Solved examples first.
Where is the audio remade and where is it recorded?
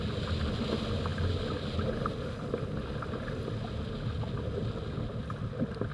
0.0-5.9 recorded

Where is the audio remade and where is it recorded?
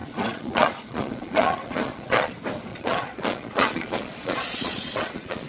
0.0-2.3 remade; 2.3-2.7 recorded; 2.7-5.5 remade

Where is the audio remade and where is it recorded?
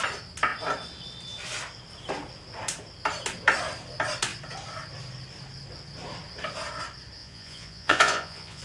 0.0-7.2 recorded; 7.2-8.6 remade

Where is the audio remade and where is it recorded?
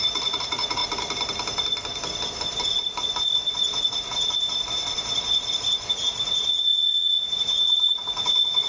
0.0-0.8 remade; 0.8-5.9 recorded; 5.9-8.7 remade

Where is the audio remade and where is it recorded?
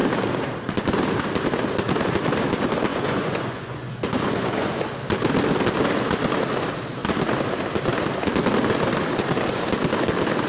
0.0-2.9 recorded; 2.9-4.8 remade; 4.8-10.5 recorded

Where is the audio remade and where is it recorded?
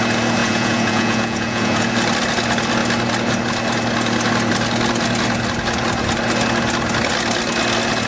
0.0-0.4 recorded; 0.4-1.9 remade; 1.9-8.1 recorded